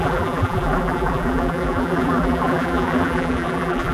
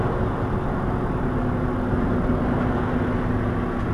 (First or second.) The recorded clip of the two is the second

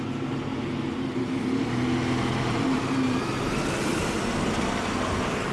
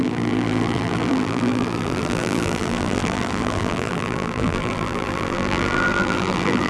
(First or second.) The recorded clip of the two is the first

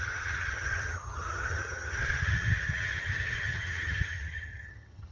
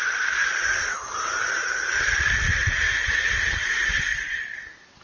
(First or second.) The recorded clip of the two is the second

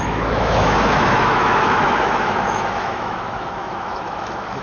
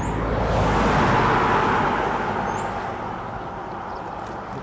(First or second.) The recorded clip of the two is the second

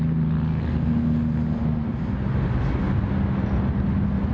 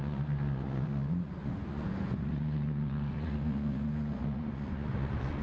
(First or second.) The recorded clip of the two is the first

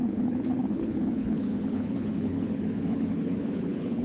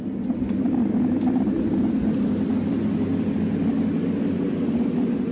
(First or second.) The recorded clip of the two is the second